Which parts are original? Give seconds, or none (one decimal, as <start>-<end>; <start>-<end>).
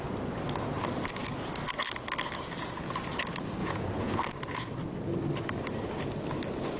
0.0-3.6; 4.2-6.8